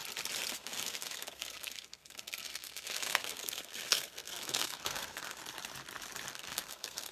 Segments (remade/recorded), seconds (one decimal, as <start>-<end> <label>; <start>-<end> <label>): 0.0-0.5 recorded; 0.5-5.4 remade; 5.4-6.3 recorded; 6.3-7.1 remade